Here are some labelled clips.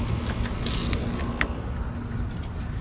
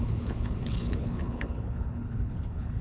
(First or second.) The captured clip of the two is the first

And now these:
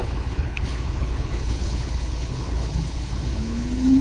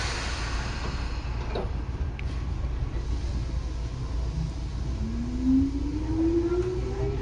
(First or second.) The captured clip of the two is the second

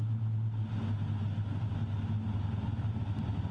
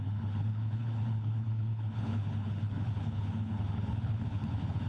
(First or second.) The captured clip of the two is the first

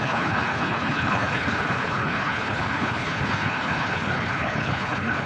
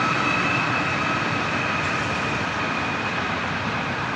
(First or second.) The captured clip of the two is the second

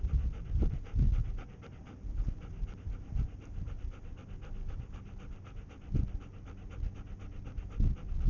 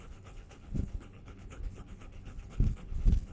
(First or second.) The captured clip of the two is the first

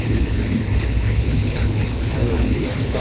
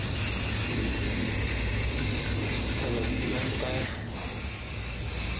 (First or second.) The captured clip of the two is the second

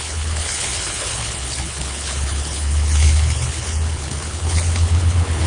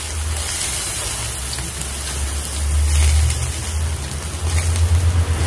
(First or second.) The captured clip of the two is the second